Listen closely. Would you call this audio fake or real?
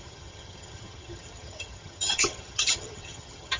fake